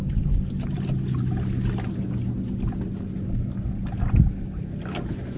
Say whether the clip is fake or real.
real